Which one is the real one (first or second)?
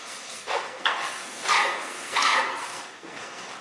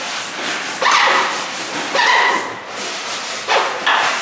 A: second